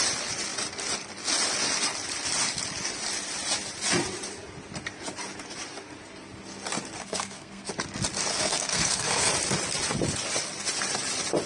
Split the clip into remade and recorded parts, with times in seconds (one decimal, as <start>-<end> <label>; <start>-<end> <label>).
0.0-7.0 recorded; 7.0-7.7 remade; 7.7-8.3 recorded; 8.3-9.3 remade; 9.3-11.5 recorded